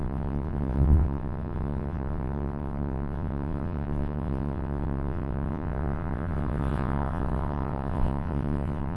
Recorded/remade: remade